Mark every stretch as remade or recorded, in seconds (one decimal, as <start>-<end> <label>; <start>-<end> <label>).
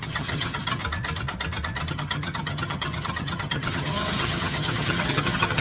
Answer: 0.0-0.8 remade; 0.8-1.9 recorded; 1.9-5.6 remade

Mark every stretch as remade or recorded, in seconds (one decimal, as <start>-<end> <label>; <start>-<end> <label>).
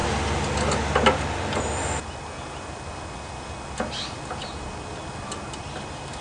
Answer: 0.0-6.2 recorded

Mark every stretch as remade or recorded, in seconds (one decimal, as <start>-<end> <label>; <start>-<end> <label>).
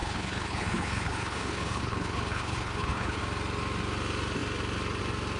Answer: 0.0-3.2 remade; 3.2-5.4 recorded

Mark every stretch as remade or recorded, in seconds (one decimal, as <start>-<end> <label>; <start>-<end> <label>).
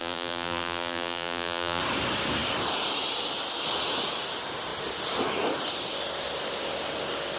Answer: 0.0-1.8 remade; 1.8-7.4 recorded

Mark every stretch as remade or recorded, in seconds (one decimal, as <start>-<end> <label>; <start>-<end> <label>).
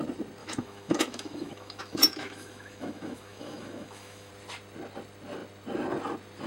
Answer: 0.0-0.4 recorded; 0.4-4.3 remade; 4.3-6.5 recorded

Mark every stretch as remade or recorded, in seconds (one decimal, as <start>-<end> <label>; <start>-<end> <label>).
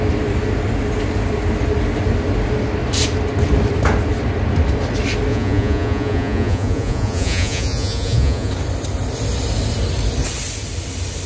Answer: 0.0-5.3 recorded; 5.3-8.5 remade; 8.5-11.3 recorded